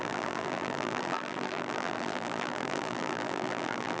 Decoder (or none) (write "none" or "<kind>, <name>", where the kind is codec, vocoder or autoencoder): vocoder, BigVGAN v2